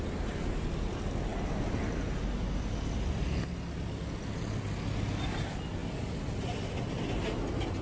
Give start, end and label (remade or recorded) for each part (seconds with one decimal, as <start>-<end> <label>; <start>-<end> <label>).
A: 0.0-7.8 recorded